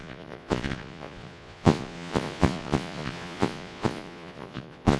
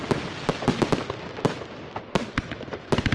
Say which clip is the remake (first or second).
first